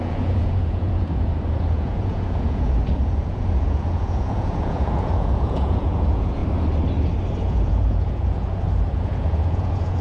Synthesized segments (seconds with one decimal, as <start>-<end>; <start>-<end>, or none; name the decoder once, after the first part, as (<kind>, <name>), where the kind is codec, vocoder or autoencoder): 0.0-6.4 (vocoder, Vocos); 7.4-10.0